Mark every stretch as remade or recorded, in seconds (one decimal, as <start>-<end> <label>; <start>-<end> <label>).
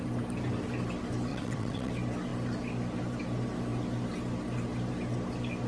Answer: 0.0-1.3 recorded; 1.3-1.9 remade; 1.9-5.7 recorded